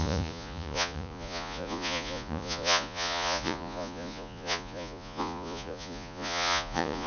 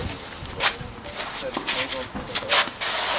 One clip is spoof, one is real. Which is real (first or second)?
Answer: second